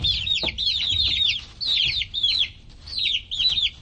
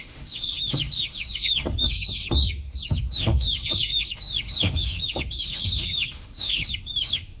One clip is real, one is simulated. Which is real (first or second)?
first